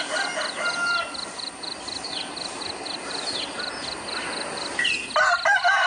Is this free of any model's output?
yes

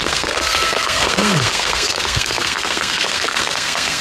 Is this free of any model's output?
no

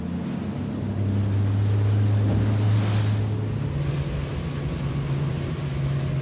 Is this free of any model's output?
yes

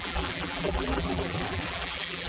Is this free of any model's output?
no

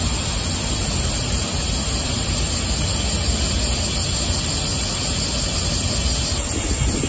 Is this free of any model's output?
yes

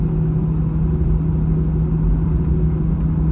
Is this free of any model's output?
yes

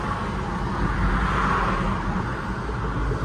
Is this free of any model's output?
yes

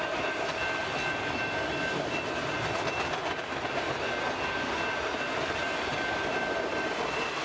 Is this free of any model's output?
yes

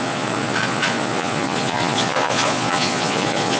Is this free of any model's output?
no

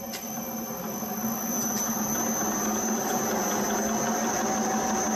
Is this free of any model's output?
yes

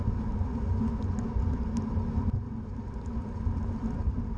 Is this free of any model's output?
yes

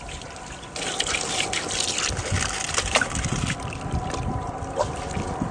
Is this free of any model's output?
yes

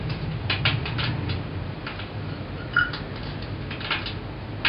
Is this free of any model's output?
yes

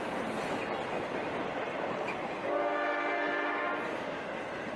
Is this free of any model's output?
yes